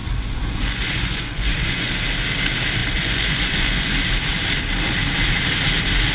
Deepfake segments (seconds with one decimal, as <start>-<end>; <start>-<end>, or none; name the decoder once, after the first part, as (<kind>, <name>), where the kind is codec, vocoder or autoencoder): 0.0-1.9 (vocoder, Vocos); 2.8-3.9